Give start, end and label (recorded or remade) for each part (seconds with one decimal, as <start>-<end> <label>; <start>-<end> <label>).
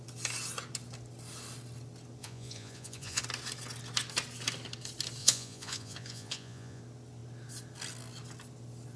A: 0.0-2.2 recorded; 2.2-3.2 remade; 3.2-5.2 recorded; 5.2-6.8 remade; 6.8-9.0 recorded